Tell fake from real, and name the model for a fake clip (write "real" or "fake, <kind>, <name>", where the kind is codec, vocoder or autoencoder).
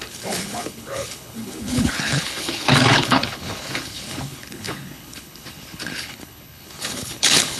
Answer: fake, codec, HILCodec